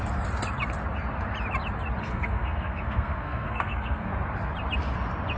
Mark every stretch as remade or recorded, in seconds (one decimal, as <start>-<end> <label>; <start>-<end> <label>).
0.0-2.0 recorded; 2.0-4.1 remade; 4.1-5.4 recorded